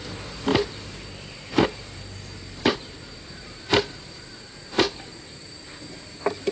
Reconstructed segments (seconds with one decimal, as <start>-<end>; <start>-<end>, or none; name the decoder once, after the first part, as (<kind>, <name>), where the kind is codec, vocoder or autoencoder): 0.0-6.5 (vocoder, BigVGAN v2)